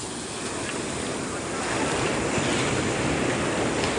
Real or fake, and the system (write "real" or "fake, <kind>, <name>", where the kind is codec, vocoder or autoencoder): real